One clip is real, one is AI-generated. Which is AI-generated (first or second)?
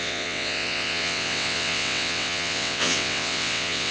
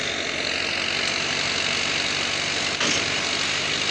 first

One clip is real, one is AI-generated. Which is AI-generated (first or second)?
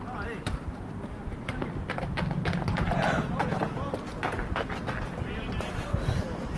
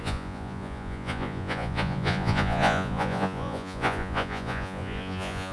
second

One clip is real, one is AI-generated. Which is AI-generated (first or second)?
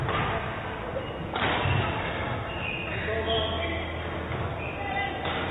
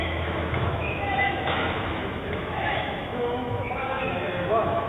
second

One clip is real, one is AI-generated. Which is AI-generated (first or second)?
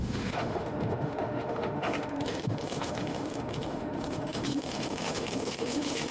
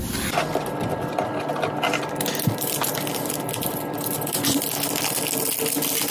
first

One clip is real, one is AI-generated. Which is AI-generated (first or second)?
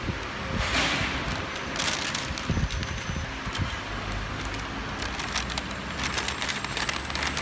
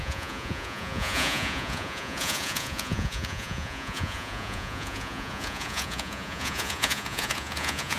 second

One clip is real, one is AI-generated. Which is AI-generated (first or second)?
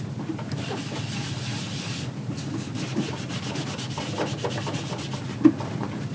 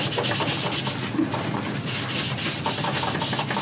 first